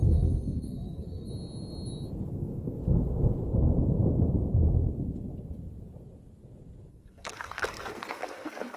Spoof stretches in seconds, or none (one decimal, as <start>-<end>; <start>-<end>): 0.0-1.3; 2.3-2.8; 6.9-8.8